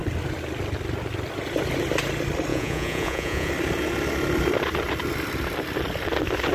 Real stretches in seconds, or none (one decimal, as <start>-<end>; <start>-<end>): 0.0-2.5; 3.5-6.5